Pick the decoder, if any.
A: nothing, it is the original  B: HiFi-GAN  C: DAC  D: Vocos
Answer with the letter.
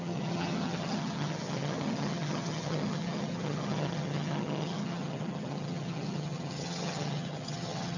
B